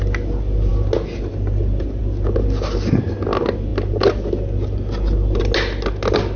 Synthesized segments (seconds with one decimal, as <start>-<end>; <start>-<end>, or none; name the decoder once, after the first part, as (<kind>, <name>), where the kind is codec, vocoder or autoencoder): none